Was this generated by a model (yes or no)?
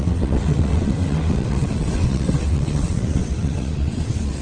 yes